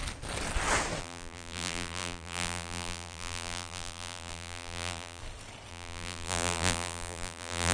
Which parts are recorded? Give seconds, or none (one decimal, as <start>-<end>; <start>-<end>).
0.0-1.0; 5.2-5.7